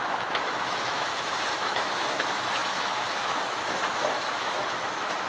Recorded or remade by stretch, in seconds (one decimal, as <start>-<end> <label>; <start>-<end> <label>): 0.0-5.3 remade